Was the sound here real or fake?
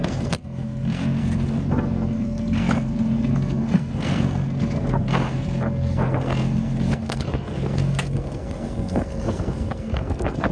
fake